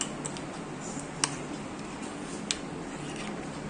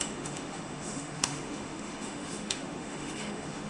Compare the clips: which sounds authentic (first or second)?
first